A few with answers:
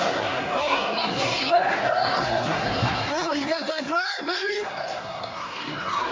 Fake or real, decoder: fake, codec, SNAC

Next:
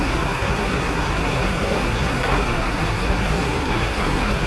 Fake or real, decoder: fake, codec, SNAC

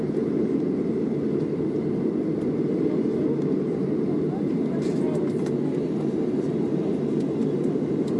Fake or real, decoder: real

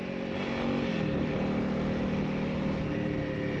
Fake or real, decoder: real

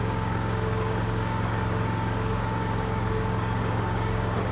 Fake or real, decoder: fake, codec, DAC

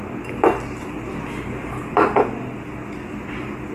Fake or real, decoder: real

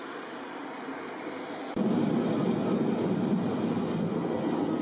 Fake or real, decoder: real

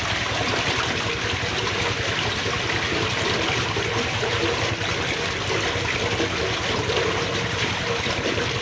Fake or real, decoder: real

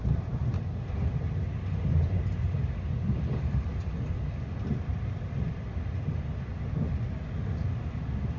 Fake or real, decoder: real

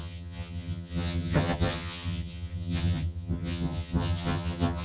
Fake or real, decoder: fake, vocoder, HiFi-GAN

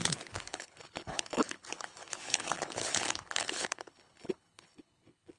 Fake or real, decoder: fake, codec, HILCodec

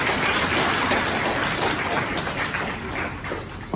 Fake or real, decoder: fake, vocoder, BigVGAN v2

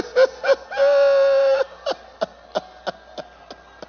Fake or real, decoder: real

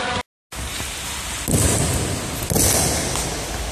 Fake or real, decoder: real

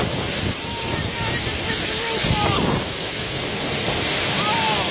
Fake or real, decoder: real